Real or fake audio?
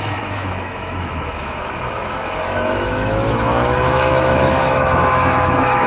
fake